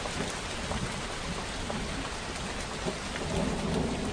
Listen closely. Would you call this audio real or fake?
real